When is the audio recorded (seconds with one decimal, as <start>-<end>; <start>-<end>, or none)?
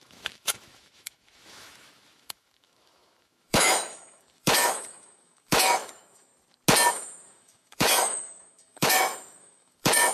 6.3-6.9